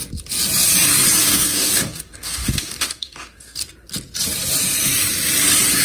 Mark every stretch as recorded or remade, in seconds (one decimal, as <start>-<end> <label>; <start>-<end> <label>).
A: 0.0-1.2 recorded; 1.2-3.6 remade; 3.6-5.8 recorded